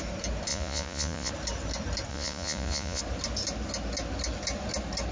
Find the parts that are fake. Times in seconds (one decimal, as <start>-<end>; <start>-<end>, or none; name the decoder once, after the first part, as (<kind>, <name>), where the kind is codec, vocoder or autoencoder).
0.5-1.3 (vocoder, Vocos); 2.1-3.0